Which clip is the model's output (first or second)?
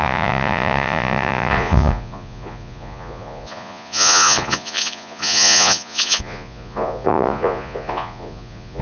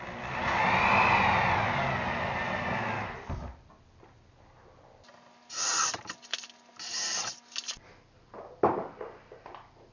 first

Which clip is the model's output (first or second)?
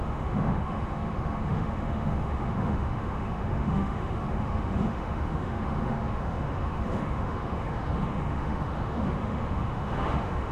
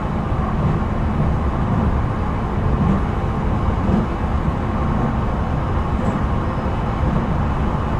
first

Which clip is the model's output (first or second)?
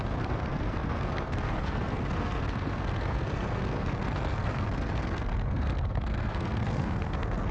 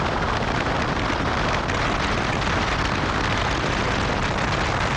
first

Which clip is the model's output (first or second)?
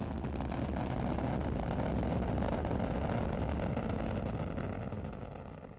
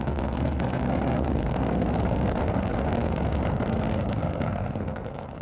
second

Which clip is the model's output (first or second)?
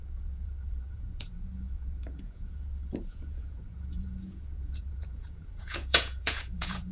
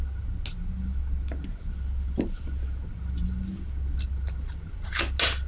first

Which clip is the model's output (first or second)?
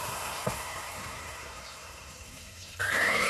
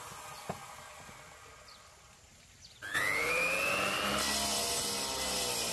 first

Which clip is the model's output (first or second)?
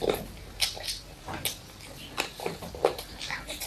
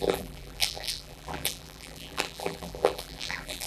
second